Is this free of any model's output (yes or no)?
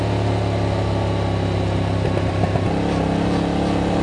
yes